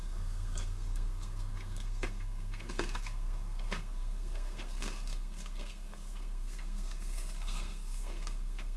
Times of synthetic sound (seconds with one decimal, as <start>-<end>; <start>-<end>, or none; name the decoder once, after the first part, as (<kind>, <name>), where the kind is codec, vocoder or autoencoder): 0.0-8.8 (codec, SNAC)